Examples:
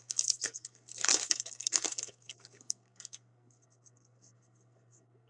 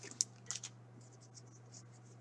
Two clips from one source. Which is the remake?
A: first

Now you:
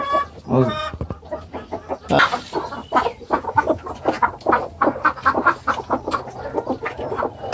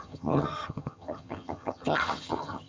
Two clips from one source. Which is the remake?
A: second